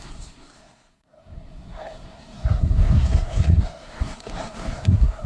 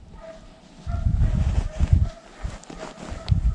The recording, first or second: second